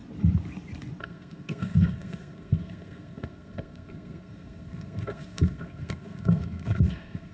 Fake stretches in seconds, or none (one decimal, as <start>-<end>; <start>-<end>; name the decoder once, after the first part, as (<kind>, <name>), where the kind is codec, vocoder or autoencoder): 1.0-7.3 (codec, SNAC)